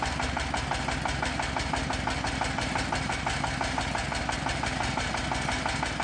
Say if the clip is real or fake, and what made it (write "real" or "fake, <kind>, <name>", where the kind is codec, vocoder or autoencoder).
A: real